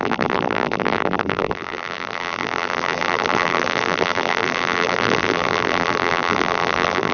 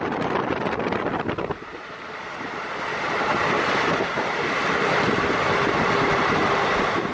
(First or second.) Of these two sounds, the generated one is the first